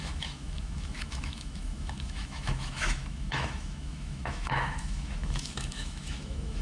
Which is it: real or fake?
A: fake